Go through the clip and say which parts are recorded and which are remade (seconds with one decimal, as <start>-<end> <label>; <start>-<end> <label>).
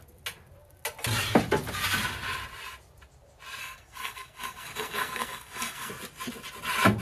0.0-3.6 recorded; 3.6-5.9 remade; 5.9-7.0 recorded